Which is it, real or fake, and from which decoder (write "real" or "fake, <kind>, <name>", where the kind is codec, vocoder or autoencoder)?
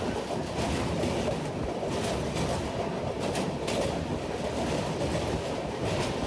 real